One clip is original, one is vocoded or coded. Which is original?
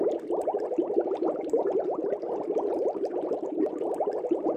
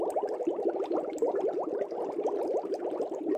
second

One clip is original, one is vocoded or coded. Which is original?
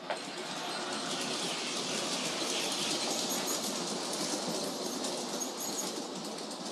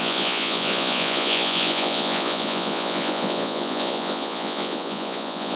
first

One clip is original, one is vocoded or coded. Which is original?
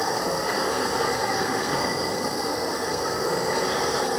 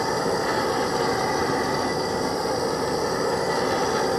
second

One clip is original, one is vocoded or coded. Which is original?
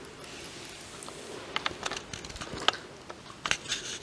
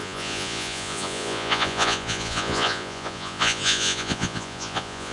first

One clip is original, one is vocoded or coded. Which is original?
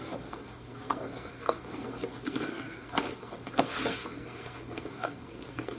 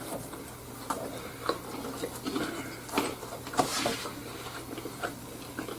second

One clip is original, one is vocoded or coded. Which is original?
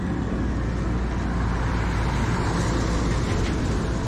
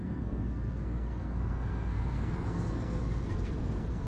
first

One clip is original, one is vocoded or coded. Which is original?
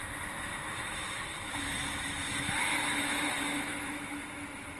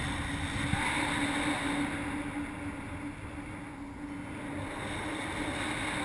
second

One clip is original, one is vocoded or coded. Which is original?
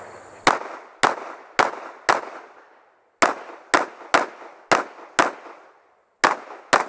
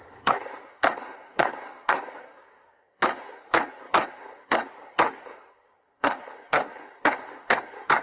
first